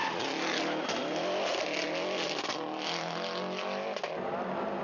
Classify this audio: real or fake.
real